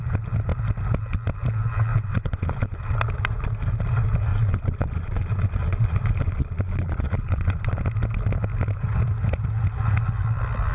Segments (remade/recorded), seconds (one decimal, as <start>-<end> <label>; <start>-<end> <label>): 0.0-1.9 recorded; 1.9-2.8 remade; 2.8-4.3 recorded; 4.3-7.8 remade; 7.8-10.7 recorded